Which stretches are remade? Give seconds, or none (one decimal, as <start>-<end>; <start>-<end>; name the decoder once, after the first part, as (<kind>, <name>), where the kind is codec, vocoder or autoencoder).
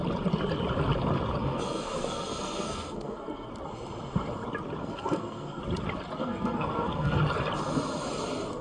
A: 1.4-3.5 (codec, SNAC); 4.8-5.6; 6.2-7.2